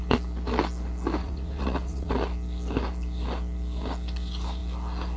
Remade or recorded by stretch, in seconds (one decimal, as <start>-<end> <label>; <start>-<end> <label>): 0.0-1.2 recorded; 1.2-2.1 remade; 2.1-5.2 recorded